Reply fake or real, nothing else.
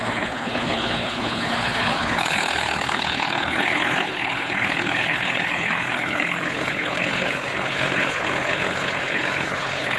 fake